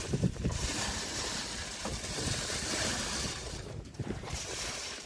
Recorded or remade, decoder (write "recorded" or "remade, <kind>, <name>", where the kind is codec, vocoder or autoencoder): remade, vocoder, BigVGAN v2